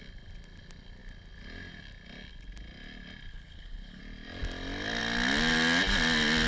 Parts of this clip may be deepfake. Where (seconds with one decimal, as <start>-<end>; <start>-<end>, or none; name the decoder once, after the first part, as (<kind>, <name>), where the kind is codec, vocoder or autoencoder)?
3.3-4.0 (codec, HILCodec)